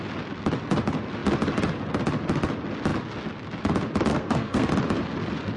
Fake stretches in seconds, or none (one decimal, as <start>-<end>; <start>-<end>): 4.1-4.7